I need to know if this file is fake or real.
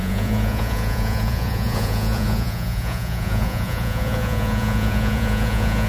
fake